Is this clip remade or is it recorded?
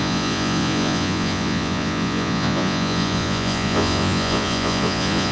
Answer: remade